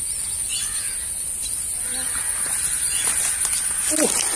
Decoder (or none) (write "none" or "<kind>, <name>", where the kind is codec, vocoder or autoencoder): none